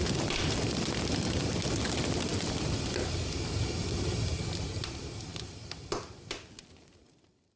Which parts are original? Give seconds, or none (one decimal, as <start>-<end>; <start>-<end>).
0.0-7.6